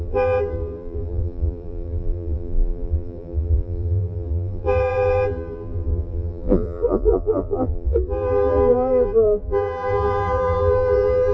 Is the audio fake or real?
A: fake